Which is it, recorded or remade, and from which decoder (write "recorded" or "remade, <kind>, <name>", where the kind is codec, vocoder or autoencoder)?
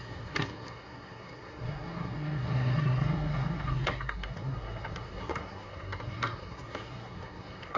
remade, codec, SNAC